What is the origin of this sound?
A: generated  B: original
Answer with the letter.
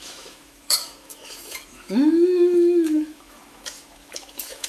A